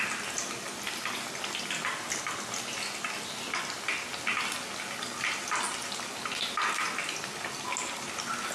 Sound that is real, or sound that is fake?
real